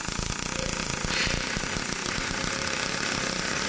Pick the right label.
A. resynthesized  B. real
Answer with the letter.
B